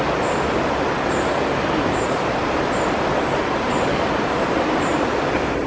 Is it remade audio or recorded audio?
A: recorded